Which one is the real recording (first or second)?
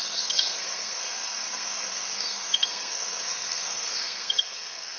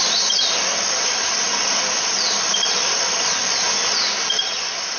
second